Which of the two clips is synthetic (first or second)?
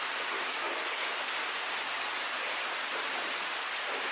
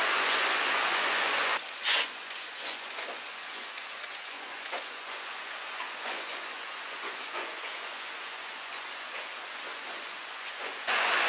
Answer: second